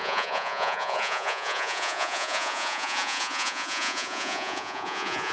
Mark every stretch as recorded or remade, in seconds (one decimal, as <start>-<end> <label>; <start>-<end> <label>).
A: 0.0-5.3 remade